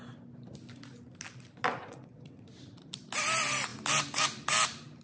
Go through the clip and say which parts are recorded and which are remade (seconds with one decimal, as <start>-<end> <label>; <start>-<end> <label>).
0.0-1.8 recorded; 1.8-2.4 remade; 2.4-5.0 recorded